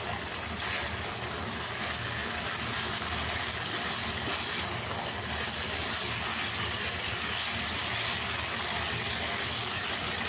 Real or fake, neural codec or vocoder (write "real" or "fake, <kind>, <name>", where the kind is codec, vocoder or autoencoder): real